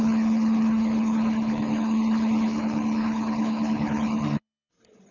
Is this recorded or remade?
remade